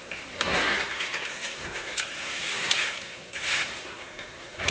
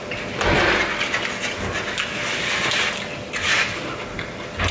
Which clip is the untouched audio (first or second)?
second